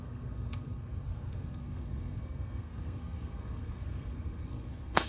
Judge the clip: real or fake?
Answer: fake